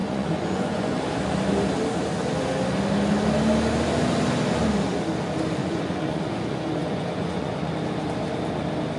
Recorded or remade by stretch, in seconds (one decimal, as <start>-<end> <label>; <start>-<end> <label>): 0.0-1.0 remade; 1.0-5.6 recorded; 5.6-7.7 remade; 7.7-9.0 recorded